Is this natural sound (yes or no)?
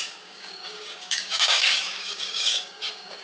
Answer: no